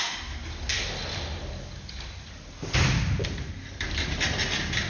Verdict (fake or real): real